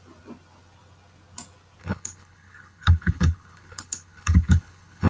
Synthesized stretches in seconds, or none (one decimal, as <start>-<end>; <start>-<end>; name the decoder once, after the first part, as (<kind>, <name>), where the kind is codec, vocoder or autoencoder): 1.8-5.1 (codec, HILCodec)